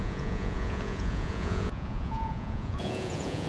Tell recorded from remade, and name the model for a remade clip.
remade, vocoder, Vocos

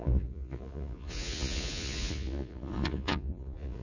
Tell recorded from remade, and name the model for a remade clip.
remade, vocoder, Vocos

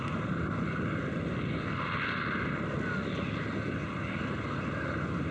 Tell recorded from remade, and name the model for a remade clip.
recorded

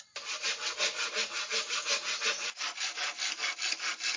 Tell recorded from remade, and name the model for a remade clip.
recorded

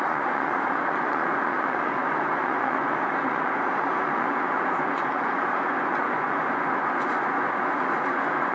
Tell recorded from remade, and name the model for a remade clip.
remade, vocoder, Vocos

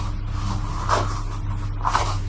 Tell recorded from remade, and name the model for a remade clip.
recorded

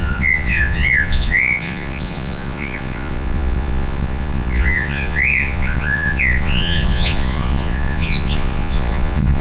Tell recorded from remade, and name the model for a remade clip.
remade, vocoder, Vocos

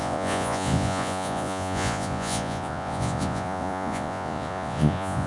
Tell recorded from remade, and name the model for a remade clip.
remade, vocoder, Vocos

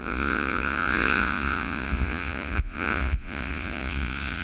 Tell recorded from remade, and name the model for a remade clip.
remade, vocoder, Vocos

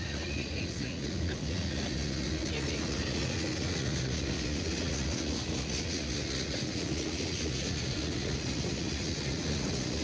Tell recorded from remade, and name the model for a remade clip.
remade, vocoder, Vocos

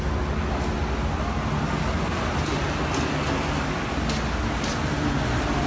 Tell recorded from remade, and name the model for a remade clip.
recorded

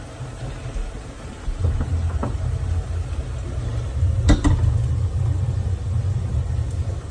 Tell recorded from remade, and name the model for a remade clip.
recorded